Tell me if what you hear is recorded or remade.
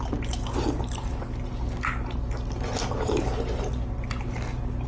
recorded